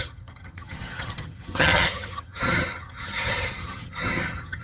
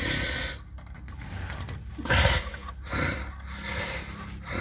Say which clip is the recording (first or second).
second